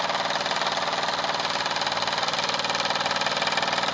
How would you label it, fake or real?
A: real